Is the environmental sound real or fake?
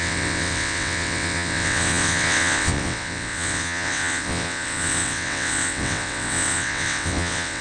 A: fake